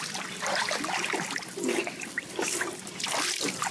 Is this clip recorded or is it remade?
recorded